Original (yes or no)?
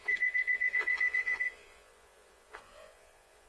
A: no